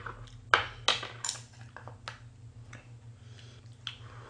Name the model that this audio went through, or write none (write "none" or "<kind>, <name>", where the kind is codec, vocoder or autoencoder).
none